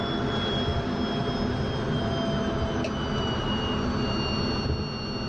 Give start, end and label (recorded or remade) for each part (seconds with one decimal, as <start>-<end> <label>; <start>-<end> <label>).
0.0-5.3 recorded